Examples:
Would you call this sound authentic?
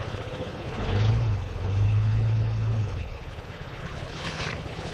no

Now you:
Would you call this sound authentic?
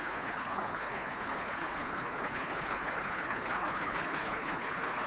no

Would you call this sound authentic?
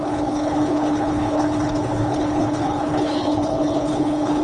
no